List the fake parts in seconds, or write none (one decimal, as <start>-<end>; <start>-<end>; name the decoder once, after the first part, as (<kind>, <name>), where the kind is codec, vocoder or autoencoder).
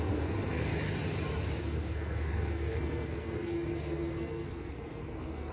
0.0-0.7 (codec, SNAC); 1.6-5.5